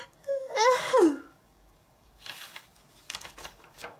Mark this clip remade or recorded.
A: remade